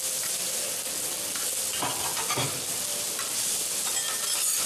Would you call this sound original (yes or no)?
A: yes